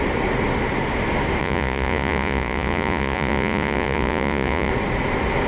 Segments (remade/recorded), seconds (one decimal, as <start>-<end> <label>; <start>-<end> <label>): 0.0-1.4 recorded; 1.4-4.7 remade; 4.7-5.5 recorded

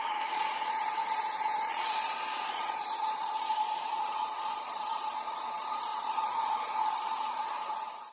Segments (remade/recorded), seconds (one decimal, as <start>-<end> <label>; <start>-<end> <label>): 0.0-8.1 remade

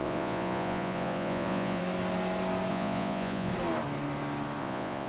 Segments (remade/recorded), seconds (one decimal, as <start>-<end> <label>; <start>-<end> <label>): 0.0-1.8 remade; 1.8-2.7 recorded; 2.7-3.5 remade; 3.5-4.6 recorded; 4.6-5.1 remade

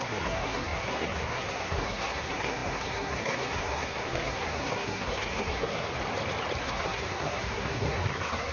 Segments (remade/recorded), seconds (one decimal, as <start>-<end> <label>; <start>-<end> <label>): 0.0-5.9 remade; 5.9-6.6 recorded; 6.6-8.5 remade

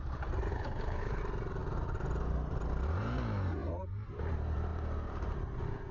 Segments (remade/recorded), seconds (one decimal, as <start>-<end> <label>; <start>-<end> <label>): 0.0-0.5 recorded; 0.5-1.2 remade; 1.2-5.9 recorded

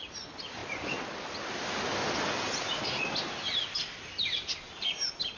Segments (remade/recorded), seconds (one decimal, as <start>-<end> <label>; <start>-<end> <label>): 0.0-5.4 recorded

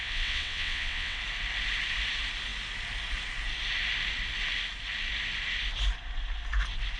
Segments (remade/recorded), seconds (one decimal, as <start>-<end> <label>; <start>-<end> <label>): 0.0-1.2 remade; 1.2-7.0 recorded

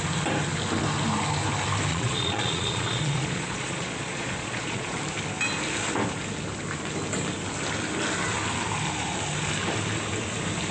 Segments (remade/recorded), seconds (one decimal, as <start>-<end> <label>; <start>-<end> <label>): 0.0-1.9 recorded; 1.9-5.0 remade; 5.0-10.7 recorded